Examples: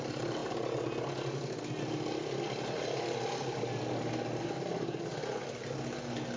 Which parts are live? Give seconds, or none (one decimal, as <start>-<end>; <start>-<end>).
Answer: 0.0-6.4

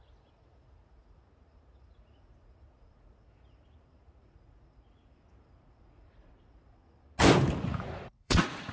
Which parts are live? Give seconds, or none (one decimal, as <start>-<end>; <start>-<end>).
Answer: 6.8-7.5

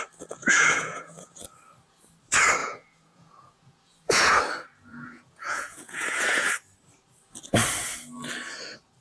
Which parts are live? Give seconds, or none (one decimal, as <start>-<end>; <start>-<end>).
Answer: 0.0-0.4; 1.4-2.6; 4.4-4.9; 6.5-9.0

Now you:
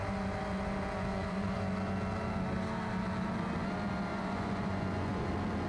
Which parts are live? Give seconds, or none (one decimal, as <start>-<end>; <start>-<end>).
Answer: 0.0-1.1; 1.6-4.1; 5.3-5.7

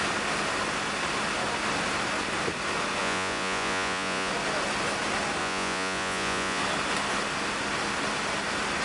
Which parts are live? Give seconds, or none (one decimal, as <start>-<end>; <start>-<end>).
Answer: 0.0-3.0; 4.3-5.4; 6.6-8.8

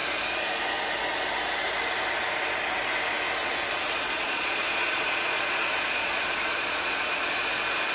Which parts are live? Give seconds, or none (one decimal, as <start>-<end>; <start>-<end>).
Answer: 0.0-3.4; 7.5-7.9

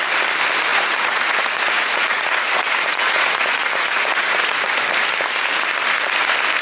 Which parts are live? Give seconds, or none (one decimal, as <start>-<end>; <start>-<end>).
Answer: 0.0-0.7; 4.7-6.6